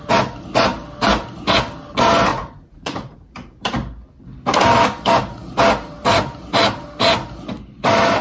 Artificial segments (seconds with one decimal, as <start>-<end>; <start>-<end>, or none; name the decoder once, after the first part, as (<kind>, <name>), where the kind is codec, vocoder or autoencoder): 2.3-3.3 (vocoder, Vocos)